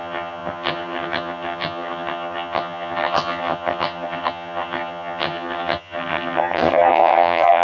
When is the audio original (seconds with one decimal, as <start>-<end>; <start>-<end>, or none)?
none